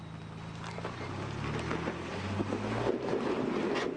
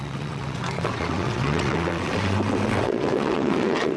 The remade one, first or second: second